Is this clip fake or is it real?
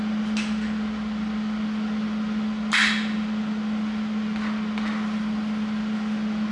real